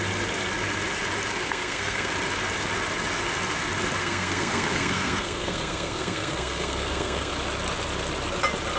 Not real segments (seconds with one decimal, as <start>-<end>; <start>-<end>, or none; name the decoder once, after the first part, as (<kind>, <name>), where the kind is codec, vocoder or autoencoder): 1.3-2.1 (codec, SNAC); 4.0-7.3